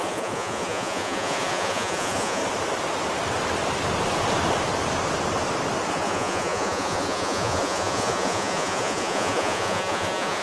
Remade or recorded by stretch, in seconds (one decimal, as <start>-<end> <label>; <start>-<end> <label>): 0.0-2.4 remade; 2.4-5.9 recorded; 5.9-10.4 remade